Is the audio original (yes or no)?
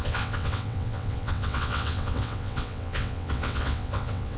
no